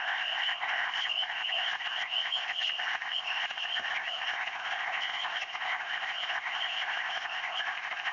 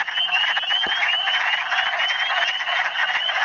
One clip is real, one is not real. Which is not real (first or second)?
first